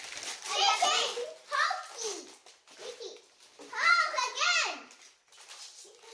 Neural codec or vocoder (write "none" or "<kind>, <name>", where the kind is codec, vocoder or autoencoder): none